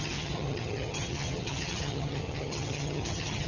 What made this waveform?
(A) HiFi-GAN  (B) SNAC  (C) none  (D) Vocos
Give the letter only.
A